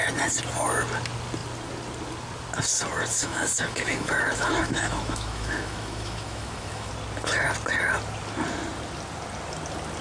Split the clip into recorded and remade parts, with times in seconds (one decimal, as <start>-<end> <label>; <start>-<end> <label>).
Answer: 0.0-3.2 recorded; 3.2-6.9 remade; 6.9-10.0 recorded